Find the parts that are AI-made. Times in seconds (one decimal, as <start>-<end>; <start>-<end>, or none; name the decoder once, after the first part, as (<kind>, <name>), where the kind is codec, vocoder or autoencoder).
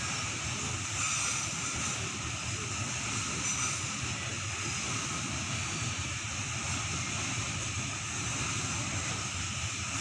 none